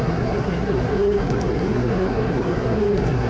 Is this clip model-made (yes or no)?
yes